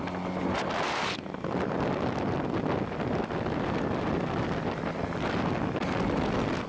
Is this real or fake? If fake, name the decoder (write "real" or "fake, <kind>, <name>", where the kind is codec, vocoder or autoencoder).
real